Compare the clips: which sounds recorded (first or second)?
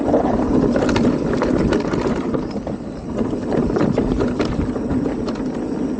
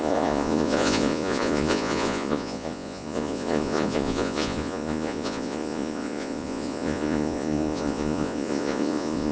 first